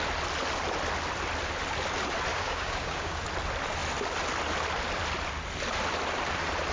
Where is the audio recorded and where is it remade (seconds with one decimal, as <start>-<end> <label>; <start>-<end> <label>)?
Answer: 0.0-2.3 recorded; 2.3-3.2 remade; 3.2-6.7 recorded